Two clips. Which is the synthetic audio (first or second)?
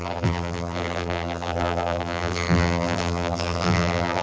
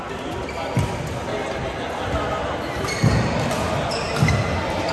first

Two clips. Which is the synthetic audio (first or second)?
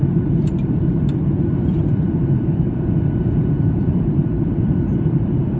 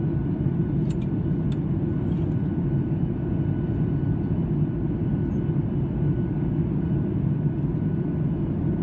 first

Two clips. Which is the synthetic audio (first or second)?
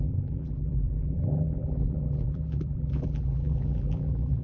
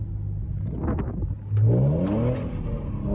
first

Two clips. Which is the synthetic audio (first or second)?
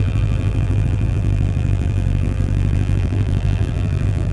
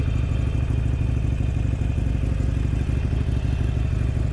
first